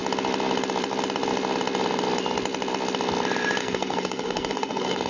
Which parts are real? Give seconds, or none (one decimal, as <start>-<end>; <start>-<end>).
0.0-3.6